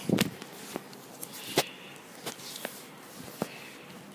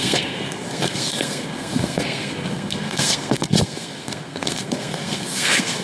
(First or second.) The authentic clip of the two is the first